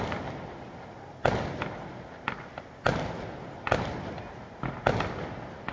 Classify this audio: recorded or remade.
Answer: recorded